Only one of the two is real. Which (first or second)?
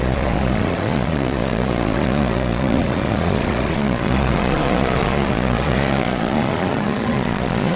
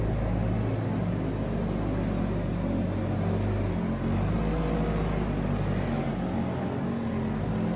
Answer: second